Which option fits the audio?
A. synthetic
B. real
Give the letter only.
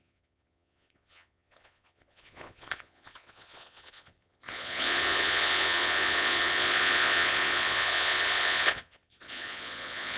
A